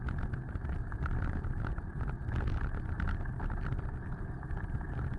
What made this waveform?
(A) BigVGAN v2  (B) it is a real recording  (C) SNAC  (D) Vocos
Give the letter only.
B